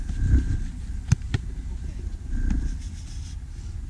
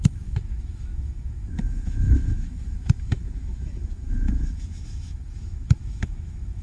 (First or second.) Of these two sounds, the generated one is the second